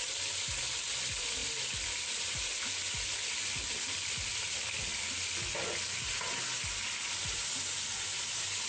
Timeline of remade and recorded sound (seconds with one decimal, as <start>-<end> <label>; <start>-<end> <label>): 0.0-8.7 recorded